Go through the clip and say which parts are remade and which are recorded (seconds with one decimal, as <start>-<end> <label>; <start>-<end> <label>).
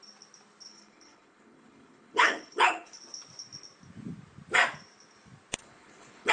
0.0-0.7 recorded; 0.7-3.0 remade; 3.0-5.6 recorded; 5.6-6.3 remade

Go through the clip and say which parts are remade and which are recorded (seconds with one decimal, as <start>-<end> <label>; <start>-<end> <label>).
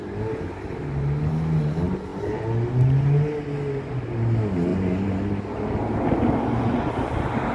0.0-7.5 recorded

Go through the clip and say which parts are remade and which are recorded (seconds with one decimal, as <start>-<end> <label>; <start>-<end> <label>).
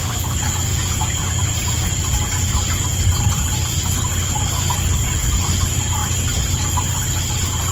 0.0-0.7 recorded; 0.7-1.9 remade; 1.9-7.7 recorded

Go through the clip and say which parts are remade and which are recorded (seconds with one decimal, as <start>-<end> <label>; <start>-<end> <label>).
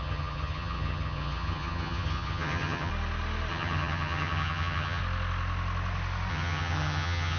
0.0-2.9 remade; 2.9-3.5 recorded; 3.5-5.0 remade; 5.0-6.3 recorded; 6.3-7.4 remade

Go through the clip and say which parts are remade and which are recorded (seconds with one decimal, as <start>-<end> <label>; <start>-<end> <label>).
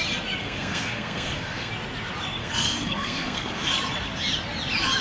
0.0-0.4 recorded; 0.4-1.7 remade; 1.7-2.4 recorded; 2.4-3.7 remade; 3.7-5.0 recorded